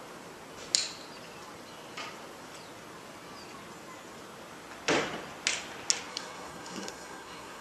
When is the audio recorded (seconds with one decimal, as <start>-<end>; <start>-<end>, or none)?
0.0-6.1